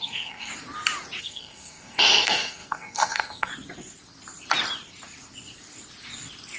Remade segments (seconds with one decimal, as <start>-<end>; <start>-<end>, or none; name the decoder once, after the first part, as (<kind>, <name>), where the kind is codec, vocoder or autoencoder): 0.0-0.5 (codec, SNAC); 1.2-3.5